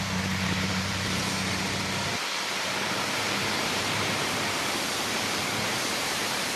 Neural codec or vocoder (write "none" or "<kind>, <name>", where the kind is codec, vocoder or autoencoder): vocoder, BigVGAN v2